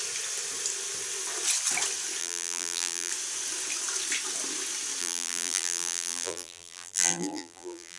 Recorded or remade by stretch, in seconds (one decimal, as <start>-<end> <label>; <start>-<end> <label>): 0.0-2.2 recorded; 2.2-3.1 remade; 3.1-5.0 recorded; 5.0-8.0 remade